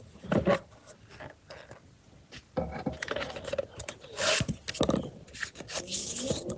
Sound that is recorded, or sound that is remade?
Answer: recorded